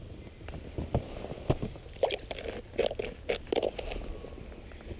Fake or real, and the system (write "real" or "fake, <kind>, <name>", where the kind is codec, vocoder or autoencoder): real